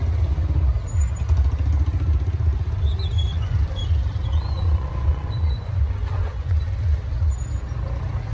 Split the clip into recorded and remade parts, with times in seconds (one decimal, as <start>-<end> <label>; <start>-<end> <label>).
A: 0.0-3.3 recorded; 3.3-3.8 remade; 3.8-4.3 recorded; 4.3-6.6 remade; 6.6-8.3 recorded